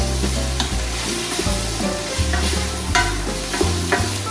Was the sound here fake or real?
real